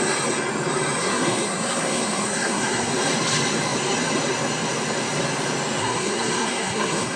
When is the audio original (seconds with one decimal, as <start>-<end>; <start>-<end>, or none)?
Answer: 0.0-1.0; 2.9-5.8